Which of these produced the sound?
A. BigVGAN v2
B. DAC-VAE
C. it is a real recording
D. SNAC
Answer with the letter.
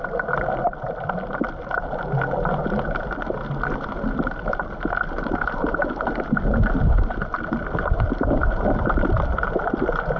C